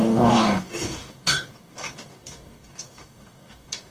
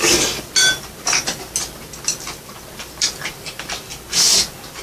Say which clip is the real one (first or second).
second